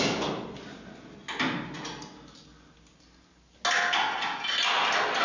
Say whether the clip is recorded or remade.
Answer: recorded